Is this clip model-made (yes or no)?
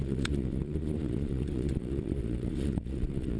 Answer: yes